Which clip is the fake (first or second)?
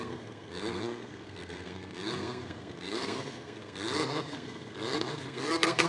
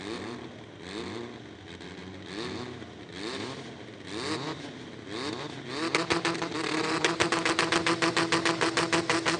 first